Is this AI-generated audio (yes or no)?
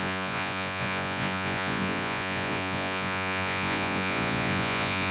yes